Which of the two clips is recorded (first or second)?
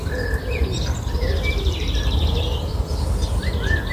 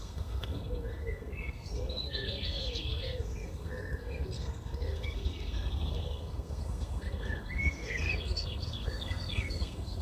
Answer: first